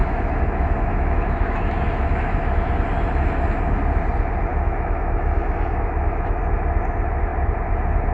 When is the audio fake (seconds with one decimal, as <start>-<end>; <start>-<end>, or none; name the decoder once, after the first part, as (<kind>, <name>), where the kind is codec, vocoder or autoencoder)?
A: 0.0-2.7 (autoencoder, DAC-VAE); 4.5-6.4